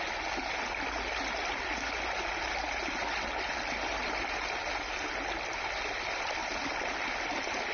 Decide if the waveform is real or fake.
real